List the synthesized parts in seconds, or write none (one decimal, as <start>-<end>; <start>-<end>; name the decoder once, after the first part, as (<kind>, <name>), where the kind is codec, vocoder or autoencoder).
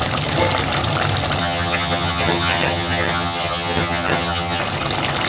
1.4-4.6 (vocoder, HiFi-GAN)